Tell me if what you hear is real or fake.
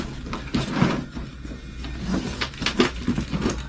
real